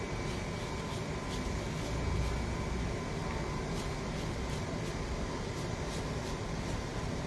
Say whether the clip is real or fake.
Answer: real